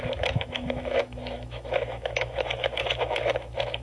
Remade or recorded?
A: remade